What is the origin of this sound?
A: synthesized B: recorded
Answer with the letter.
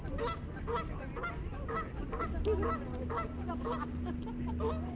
B